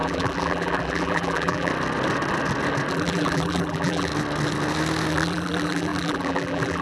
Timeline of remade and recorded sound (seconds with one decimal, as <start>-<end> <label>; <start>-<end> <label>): 0.0-1.7 remade; 1.7-2.9 recorded; 2.9-4.1 remade; 4.1-5.1 recorded; 5.1-6.8 remade